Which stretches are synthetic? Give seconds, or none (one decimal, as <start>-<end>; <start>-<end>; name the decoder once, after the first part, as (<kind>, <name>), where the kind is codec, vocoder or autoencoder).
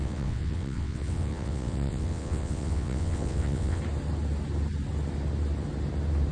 0.0-3.8 (vocoder, WaveNeXt)